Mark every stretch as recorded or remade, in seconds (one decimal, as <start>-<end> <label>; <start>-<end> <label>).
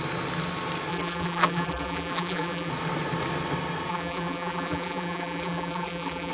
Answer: 0.0-0.9 recorded; 0.9-2.7 remade; 2.7-3.9 recorded; 3.9-6.3 remade